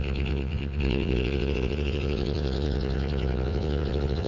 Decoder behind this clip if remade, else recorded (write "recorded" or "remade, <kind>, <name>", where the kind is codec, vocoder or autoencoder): remade, vocoder, WaveNeXt